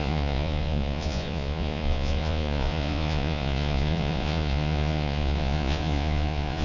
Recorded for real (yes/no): no